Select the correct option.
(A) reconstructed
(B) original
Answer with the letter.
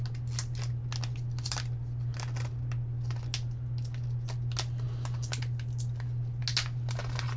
B